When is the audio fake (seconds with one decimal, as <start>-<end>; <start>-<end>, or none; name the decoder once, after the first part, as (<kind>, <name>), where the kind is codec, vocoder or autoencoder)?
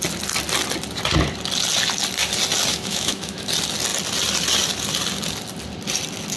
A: 2.7-3.5 (autoencoder, DAC-VAE)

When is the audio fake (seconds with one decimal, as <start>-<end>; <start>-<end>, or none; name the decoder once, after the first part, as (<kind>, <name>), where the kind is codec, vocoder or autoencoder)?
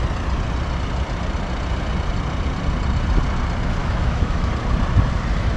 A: 3.8-4.5 (autoencoder, DAC-VAE)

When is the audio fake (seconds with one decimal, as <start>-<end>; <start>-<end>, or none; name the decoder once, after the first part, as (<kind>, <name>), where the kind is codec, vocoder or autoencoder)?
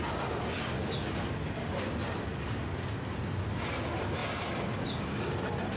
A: none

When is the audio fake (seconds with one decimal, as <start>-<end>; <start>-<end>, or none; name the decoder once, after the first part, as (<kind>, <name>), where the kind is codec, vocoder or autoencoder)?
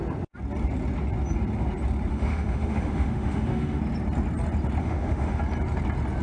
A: 2.1-3.8 (autoencoder, DAC-VAE); 4.8-5.4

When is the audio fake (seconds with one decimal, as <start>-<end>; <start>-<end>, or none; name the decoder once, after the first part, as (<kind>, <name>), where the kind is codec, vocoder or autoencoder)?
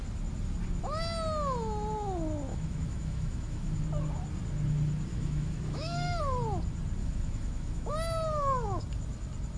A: 2.5-3.8 (autoencoder, DAC-VAE); 5.1-6.2; 7.0-7.9